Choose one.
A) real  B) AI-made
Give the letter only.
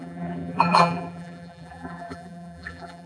B